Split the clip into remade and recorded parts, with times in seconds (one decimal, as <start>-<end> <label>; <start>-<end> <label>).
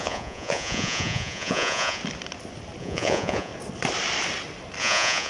0.0-2.0 remade; 2.0-2.8 recorded; 2.8-3.5 remade; 3.5-4.8 recorded; 4.8-5.3 remade